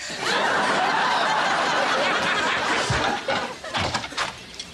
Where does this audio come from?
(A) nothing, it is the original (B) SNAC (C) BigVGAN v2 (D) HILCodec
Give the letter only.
C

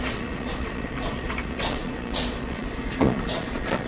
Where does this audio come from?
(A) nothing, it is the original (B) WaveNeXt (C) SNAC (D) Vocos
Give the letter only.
D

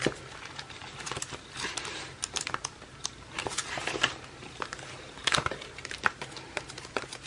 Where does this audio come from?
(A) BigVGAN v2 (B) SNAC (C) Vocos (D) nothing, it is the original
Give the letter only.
A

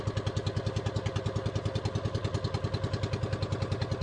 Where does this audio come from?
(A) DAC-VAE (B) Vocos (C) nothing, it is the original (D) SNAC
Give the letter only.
C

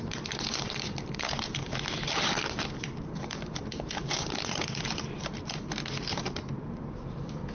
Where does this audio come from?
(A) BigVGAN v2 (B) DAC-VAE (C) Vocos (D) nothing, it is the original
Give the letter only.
A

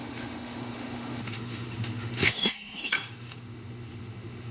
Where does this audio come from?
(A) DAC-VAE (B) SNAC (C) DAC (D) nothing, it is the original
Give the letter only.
A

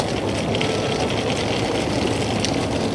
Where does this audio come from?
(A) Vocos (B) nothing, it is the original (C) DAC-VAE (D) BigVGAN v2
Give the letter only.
B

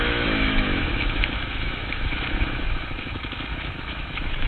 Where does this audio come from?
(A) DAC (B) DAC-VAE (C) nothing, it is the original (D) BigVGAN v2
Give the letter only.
B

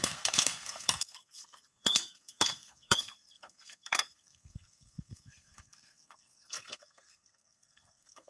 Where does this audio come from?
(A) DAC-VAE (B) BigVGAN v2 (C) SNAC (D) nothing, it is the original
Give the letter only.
C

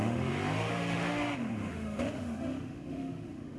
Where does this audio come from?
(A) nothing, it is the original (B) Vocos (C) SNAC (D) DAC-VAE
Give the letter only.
D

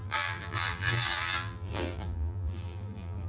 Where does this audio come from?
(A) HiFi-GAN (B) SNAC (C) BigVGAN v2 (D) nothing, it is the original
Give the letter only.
C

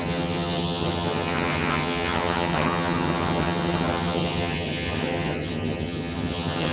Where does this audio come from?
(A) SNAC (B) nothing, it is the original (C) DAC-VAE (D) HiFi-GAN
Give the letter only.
D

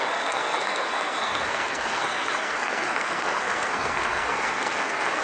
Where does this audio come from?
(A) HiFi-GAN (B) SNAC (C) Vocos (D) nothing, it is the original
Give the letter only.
B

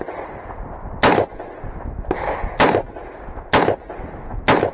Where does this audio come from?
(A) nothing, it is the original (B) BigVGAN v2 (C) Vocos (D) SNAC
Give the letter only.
A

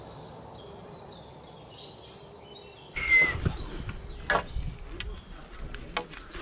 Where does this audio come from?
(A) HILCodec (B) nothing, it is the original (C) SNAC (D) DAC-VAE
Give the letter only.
B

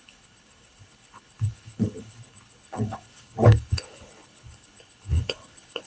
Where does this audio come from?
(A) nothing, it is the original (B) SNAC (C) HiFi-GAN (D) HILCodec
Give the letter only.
D